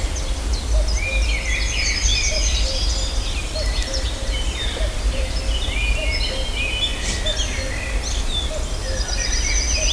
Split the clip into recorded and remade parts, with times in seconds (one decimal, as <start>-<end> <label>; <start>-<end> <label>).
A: 0.0-2.1 recorded; 2.1-5.3 remade; 5.3-8.8 recorded; 8.8-9.5 remade; 9.5-9.9 recorded